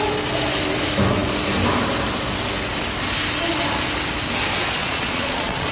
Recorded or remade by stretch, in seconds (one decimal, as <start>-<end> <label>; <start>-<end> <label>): 0.0-4.8 recorded; 4.8-5.7 remade